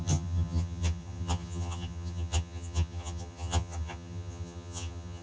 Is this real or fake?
fake